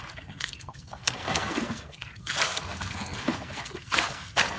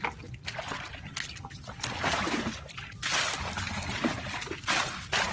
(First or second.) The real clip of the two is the second